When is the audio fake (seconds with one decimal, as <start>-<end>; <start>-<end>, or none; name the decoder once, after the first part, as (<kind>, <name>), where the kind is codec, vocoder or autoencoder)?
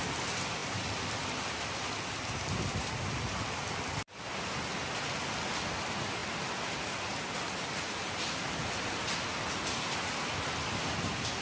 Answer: 0.6-2.3 (vocoder, BigVGAN v2); 6.2-7.4